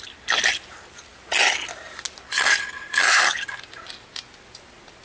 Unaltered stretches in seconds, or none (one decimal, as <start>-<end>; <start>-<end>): 0.0-5.0